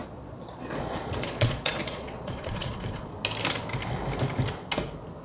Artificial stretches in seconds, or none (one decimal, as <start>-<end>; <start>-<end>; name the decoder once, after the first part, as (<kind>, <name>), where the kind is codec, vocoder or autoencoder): 0.0-3.1 (vocoder, Vocos)